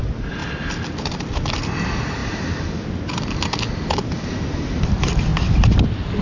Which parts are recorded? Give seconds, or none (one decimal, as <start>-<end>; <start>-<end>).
0.0-6.2